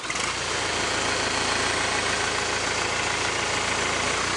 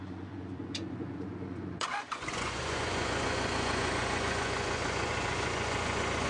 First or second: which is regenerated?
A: second